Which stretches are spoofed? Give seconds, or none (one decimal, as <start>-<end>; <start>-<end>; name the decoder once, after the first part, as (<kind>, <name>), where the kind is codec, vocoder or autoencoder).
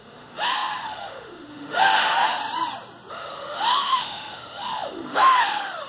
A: 0.0-2.4 (autoencoder, DAC-VAE); 3.1-5.9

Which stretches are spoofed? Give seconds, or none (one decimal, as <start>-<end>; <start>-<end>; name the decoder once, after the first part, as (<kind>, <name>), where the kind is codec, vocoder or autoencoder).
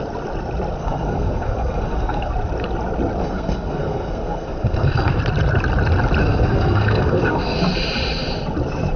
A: 0.8-2.3 (codec, SNAC); 3.2-5.2; 6.2-7.6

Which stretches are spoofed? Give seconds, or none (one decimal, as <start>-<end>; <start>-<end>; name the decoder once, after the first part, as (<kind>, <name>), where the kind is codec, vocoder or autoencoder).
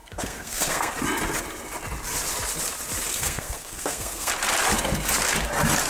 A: 0.0-0.9 (codec, SNAC); 3.1-4.3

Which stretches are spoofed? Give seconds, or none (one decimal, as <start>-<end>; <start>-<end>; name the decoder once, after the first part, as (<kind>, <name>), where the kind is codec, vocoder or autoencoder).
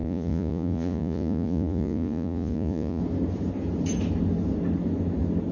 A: 0.0-3.0 (vocoder, Vocos)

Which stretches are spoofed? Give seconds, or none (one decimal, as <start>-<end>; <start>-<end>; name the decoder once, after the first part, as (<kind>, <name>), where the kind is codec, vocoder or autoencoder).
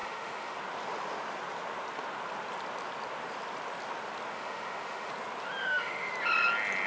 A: 0.0-0.6 (autoencoder, DAC-VAE); 4.3-5.1; 5.6-6.1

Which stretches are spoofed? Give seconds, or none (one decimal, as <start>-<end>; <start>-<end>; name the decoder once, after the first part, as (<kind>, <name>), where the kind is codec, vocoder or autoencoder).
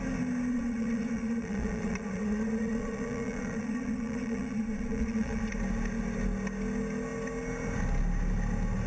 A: 0.5-5.4 (vocoder, Vocos)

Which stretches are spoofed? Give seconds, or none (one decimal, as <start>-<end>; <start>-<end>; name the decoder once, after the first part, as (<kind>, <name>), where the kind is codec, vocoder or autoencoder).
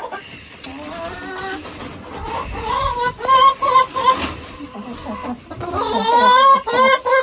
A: none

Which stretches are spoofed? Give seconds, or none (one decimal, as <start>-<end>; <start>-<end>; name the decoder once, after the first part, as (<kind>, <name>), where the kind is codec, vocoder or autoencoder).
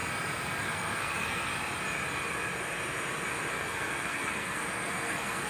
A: 0.6-1.5 (codec, SNAC); 3.5-5.5